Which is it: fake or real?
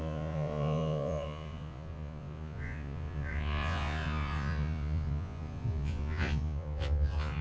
fake